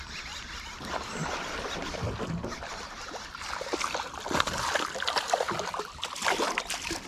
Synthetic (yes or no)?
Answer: no